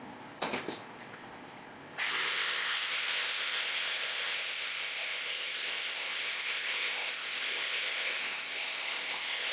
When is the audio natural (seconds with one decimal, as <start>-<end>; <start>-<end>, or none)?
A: none

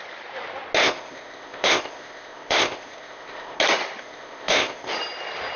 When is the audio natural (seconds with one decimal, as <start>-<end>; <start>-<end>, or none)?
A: 0.0-0.8; 3.6-4.0; 4.9-5.6

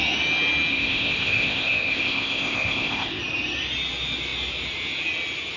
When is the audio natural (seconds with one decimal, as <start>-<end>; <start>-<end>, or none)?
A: 0.0-0.7; 3.2-5.6

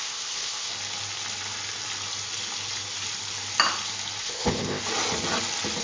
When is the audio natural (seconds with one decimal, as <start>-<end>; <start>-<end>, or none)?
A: 0.7-4.2; 4.8-5.8